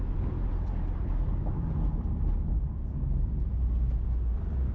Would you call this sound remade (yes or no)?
no